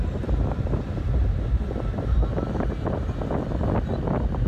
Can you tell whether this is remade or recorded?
recorded